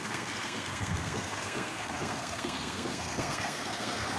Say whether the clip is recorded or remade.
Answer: remade